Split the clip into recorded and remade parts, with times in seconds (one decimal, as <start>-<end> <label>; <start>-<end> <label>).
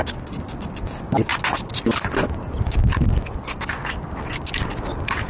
0.0-5.3 recorded